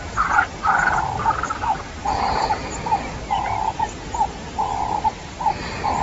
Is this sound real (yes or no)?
no